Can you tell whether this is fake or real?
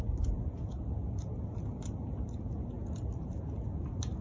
real